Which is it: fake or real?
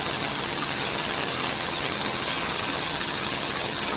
fake